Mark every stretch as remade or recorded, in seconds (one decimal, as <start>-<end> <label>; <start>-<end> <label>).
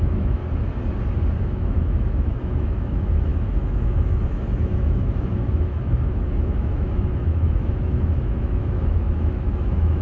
0.0-0.4 remade; 0.4-1.4 recorded; 1.4-10.0 remade